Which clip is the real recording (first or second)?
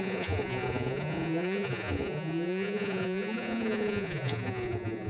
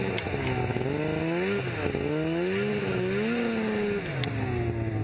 second